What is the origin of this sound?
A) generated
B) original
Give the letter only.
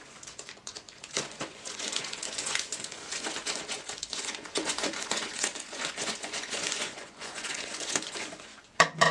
A